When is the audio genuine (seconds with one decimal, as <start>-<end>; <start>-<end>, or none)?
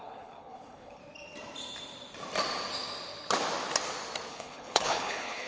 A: 1.0-4.3